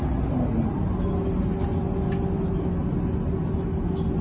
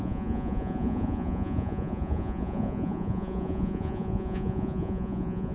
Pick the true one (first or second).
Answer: first